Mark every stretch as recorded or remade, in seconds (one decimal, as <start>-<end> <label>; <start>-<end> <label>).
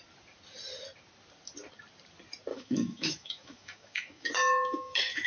0.0-2.5 recorded; 2.5-5.3 remade